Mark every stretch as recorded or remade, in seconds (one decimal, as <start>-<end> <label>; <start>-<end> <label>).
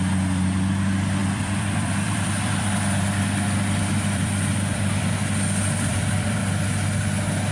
0.0-1.2 recorded; 1.2-5.0 remade; 5.0-5.9 recorded; 5.9-6.4 remade; 6.4-7.5 recorded